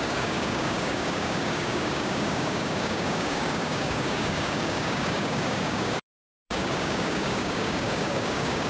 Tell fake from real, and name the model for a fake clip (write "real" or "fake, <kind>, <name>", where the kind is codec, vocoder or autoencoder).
fake, codec, DAC